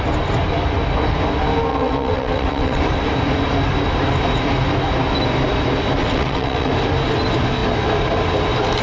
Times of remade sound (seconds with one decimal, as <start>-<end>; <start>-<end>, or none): 1.7-2.8; 6.0-6.7